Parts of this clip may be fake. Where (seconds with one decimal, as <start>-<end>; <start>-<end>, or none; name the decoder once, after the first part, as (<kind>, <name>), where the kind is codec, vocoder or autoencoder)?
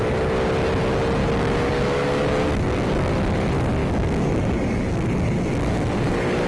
1.2-3.1 (codec, DAC); 3.8-6.5